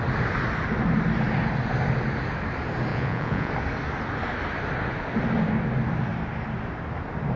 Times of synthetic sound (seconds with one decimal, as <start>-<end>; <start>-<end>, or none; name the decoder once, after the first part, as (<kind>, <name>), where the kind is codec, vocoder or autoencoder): 2.9-3.5 (vocoder, Vocos)